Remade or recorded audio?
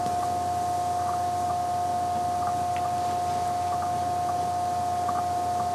recorded